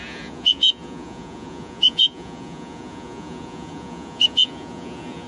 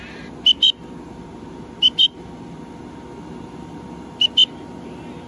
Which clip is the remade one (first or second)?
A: first